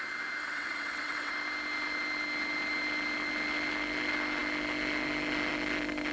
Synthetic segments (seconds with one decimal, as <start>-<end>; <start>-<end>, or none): 0.4-1.3